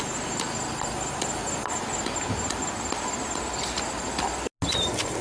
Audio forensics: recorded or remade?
recorded